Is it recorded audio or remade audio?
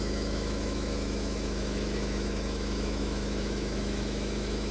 remade